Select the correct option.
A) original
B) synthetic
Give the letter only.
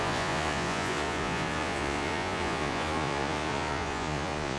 B